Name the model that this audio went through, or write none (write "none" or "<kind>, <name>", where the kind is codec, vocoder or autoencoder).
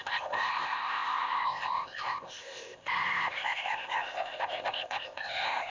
codec, ZipCodec